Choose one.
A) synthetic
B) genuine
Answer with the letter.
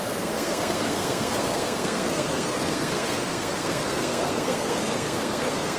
A